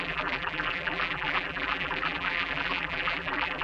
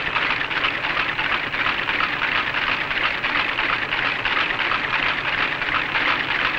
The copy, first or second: first